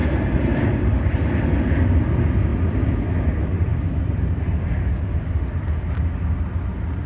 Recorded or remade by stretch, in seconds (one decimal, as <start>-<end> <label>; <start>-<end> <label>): 0.0-1.3 remade; 1.3-3.7 recorded; 3.7-4.8 remade; 4.8-7.1 recorded